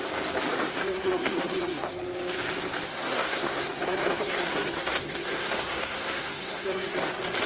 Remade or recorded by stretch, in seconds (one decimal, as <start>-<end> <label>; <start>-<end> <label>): 0.0-0.5 recorded; 0.5-1.9 remade; 1.9-2.9 recorded; 2.9-7.1 remade; 7.1-7.5 recorded